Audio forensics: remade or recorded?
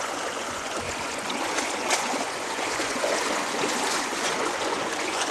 remade